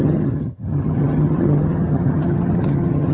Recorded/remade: remade